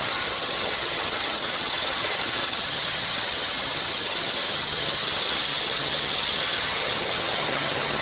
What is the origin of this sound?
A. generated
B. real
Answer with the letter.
A